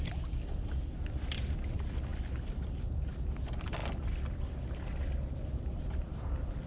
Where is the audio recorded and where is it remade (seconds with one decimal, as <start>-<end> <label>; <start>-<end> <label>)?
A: 0.0-6.7 recorded